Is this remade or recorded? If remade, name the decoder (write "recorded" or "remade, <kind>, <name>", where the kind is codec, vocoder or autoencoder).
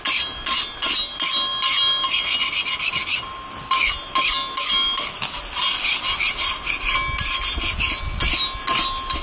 recorded